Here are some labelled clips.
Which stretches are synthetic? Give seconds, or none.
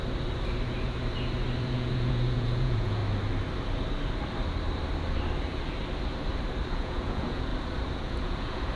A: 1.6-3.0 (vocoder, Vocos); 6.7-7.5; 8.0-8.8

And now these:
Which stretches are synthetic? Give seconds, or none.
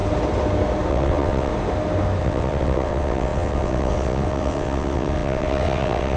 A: 0.9-1.5 (vocoder, WaveNeXt); 2.2-6.2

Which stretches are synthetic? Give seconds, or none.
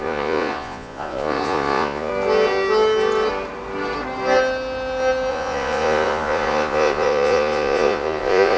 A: 0.0-2.1 (vocoder, Vocos); 5.3-8.6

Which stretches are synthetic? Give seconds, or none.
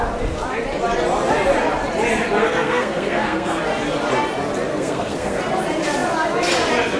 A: 2.4-3.6 (codec, SNAC); 4.7-5.4